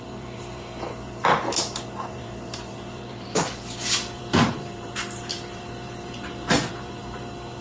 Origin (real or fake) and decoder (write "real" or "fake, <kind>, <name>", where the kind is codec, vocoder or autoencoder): fake, vocoder, BigVGAN v2